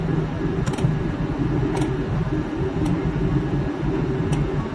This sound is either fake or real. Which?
real